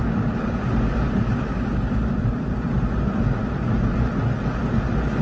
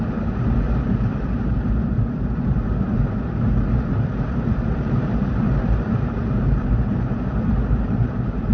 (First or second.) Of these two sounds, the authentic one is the first